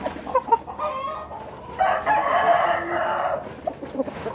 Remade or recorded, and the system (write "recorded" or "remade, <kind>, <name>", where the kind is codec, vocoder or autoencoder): recorded